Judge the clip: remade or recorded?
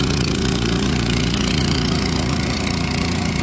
remade